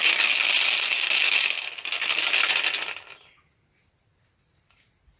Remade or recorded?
recorded